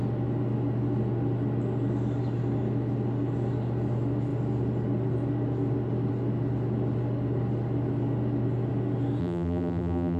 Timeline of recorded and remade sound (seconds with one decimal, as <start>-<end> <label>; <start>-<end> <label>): 0.0-9.2 recorded; 9.2-10.2 remade